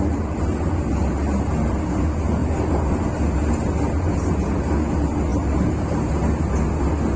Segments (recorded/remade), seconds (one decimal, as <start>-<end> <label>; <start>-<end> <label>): 0.0-7.2 recorded